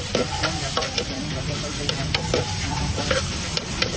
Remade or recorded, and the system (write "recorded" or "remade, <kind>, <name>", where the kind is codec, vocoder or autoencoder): remade, vocoder, BigVGAN v2